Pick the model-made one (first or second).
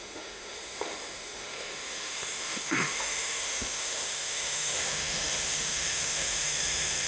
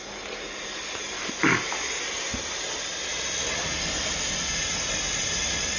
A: first